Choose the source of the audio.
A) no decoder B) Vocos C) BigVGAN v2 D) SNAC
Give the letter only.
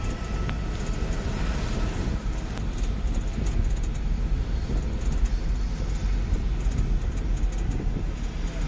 A